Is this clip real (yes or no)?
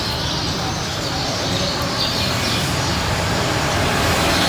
no